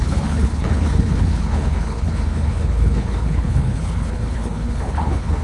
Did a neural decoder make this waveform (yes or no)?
yes